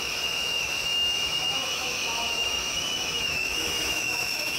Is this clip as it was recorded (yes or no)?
no